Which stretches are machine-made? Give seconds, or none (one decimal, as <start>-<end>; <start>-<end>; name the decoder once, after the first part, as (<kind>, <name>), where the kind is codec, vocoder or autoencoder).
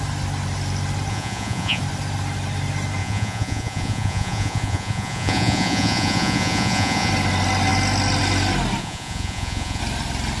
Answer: 1.1-1.8 (vocoder, Vocos); 3.0-7.1; 8.8-9.8